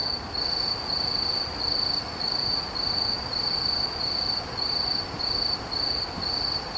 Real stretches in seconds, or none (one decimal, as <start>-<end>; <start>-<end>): 0.0-6.8